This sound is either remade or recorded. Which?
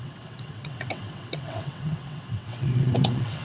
remade